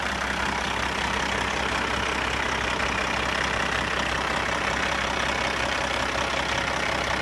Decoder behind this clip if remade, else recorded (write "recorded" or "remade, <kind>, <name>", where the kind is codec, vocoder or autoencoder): recorded